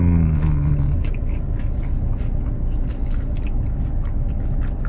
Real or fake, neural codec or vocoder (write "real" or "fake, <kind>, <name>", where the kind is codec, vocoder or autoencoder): real